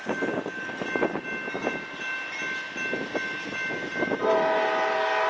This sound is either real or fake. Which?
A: real